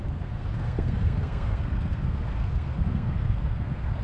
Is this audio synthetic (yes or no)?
yes